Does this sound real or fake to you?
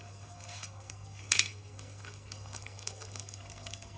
fake